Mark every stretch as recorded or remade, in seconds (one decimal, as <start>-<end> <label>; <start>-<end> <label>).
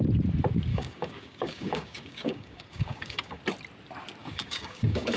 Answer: 0.0-0.7 recorded; 0.7-3.4 remade; 3.4-4.2 recorded; 4.2-5.2 remade